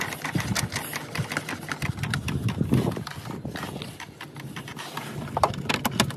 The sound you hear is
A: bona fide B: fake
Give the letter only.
A